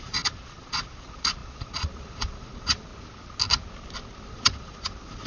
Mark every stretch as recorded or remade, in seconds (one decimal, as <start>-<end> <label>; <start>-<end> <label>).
0.0-2.9 remade; 2.9-4.3 recorded; 4.3-5.3 remade